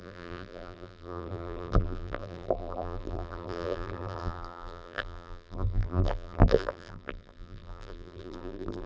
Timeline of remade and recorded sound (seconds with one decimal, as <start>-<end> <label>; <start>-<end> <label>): 0.0-8.9 remade